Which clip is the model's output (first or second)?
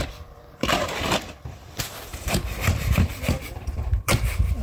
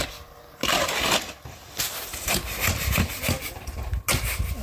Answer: first